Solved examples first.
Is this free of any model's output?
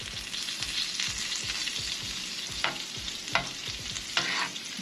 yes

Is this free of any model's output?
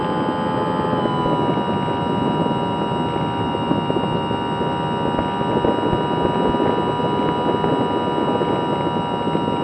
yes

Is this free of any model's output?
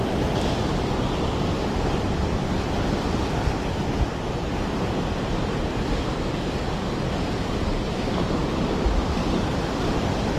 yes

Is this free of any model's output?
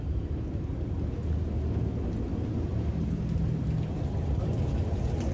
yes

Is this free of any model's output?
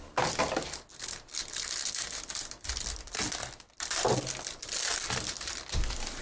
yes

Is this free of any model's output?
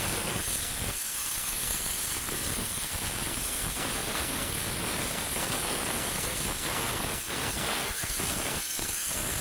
no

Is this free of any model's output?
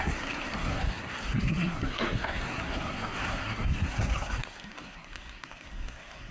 no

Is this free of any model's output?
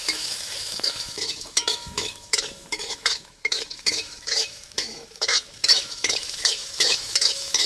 no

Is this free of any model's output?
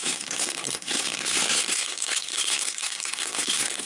no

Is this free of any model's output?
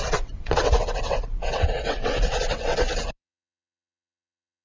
no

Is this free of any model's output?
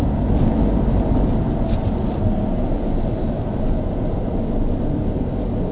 yes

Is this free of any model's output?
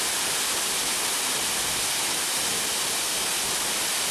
yes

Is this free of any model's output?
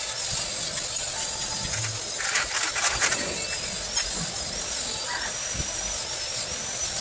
yes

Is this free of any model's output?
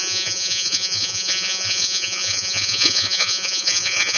no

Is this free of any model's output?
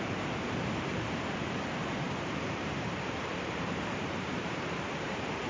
no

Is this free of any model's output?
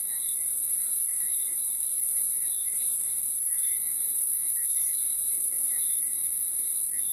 no